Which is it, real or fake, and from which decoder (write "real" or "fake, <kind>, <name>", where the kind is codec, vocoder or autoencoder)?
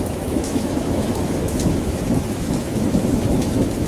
fake, autoencoder, DAC-VAE